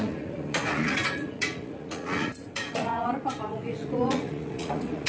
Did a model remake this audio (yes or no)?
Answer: yes